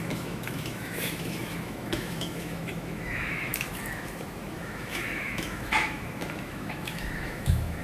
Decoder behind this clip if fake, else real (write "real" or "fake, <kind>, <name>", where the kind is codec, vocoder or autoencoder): fake, autoencoder, DAC-VAE